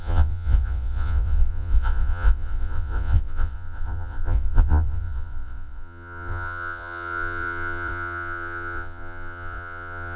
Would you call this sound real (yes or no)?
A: no